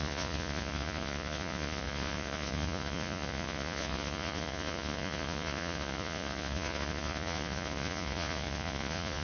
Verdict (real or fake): fake